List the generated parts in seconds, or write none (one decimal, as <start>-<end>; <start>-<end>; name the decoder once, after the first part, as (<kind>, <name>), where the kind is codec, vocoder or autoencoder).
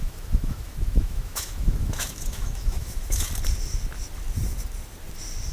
0.0-3.3 (autoencoder, DAC-VAE)